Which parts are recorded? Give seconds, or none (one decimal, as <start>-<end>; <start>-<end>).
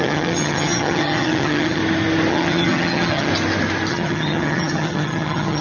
1.8-2.3; 3.3-3.9